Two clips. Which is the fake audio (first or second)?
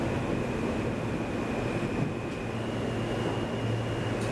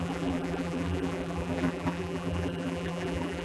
second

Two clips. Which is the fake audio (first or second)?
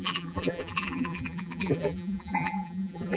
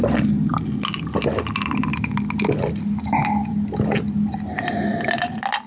first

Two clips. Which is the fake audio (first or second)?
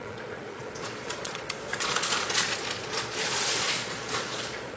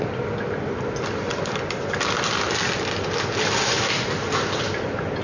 first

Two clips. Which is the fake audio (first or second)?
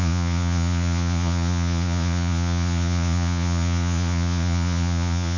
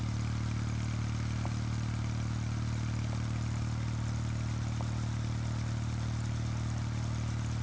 first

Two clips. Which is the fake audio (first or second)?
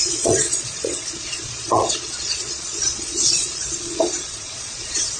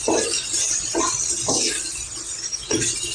first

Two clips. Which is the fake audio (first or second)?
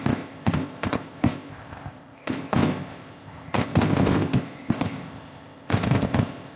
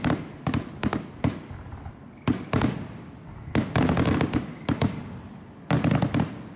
first